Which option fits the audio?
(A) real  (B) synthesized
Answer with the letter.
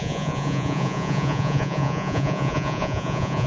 B